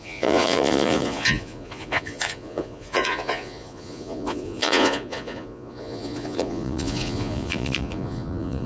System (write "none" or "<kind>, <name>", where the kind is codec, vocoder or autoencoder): vocoder, Vocos